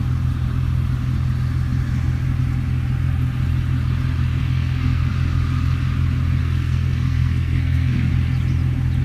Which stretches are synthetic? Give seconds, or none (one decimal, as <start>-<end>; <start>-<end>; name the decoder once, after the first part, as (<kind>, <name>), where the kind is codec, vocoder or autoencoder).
4.4-5.1 (codec, SNAC); 6.4-8.1